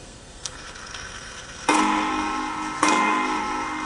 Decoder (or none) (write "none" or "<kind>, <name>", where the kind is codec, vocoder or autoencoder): codec, SNAC